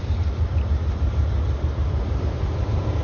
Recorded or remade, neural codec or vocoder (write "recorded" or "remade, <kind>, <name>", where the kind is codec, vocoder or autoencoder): remade, vocoder, BigVGAN v2